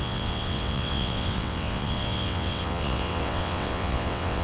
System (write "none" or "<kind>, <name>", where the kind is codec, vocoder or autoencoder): vocoder, WaveNeXt